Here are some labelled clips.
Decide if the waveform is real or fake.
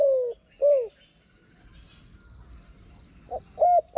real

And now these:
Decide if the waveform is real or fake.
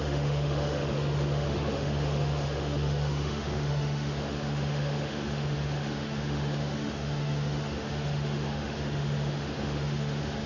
fake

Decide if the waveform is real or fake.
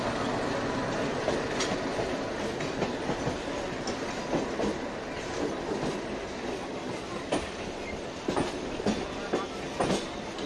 real